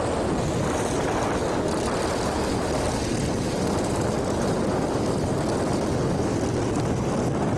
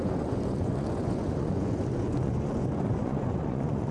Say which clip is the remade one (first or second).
second